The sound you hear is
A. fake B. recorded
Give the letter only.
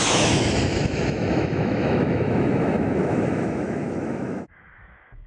A